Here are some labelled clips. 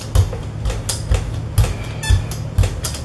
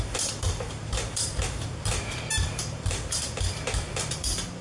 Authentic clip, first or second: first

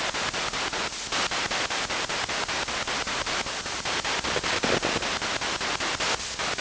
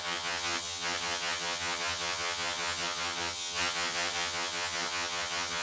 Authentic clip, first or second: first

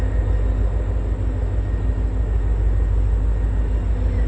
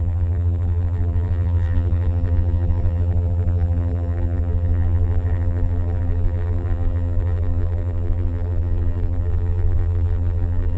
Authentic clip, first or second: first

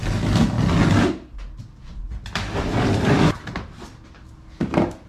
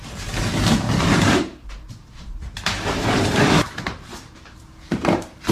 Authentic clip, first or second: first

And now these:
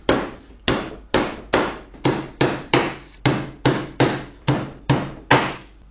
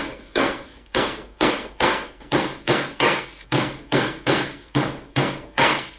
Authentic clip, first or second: first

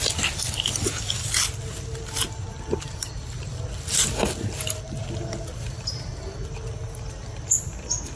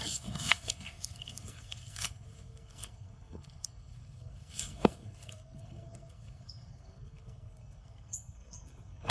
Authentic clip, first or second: first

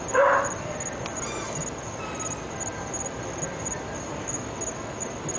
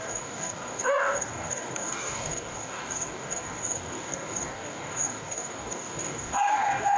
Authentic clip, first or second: first